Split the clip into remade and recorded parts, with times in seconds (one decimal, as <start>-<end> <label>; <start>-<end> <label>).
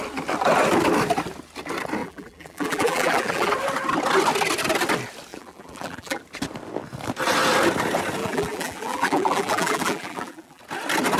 0.0-2.0 recorded; 2.0-3.5 remade; 3.5-5.3 recorded; 5.3-6.2 remade; 6.2-8.2 recorded; 8.2-10.6 remade; 10.6-11.2 recorded